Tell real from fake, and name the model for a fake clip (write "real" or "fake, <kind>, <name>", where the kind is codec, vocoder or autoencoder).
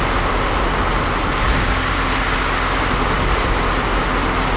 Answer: real